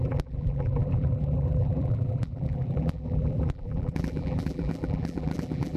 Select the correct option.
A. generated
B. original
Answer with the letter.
A